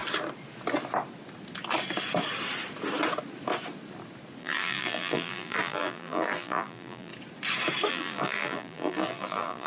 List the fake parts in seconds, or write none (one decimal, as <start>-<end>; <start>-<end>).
4.4-7.1; 7.9-9.7